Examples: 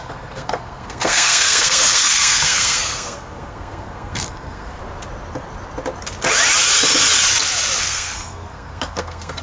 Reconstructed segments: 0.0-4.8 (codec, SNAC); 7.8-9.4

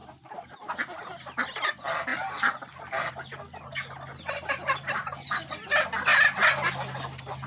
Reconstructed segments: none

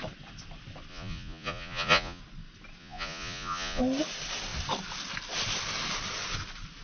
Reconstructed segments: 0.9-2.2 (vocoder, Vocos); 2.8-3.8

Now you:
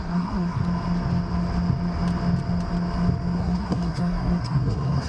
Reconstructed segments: 0.0-0.6 (codec, SNAC); 3.4-5.1